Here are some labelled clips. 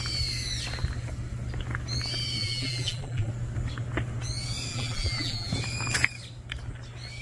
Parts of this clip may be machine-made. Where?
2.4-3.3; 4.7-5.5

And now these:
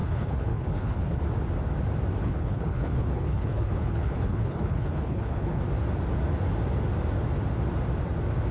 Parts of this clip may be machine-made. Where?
0.0-1.2; 2.2-5.6

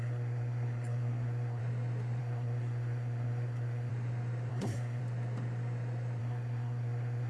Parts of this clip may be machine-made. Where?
0.0-1.6; 2.2-3.9; 4.5-5.0; 6.2-7.3

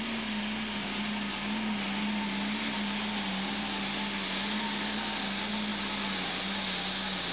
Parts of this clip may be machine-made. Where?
none